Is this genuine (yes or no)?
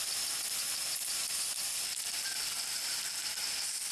yes